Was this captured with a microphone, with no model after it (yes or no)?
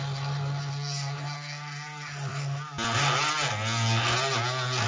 yes